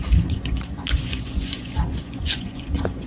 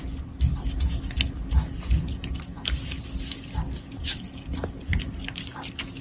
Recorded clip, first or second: second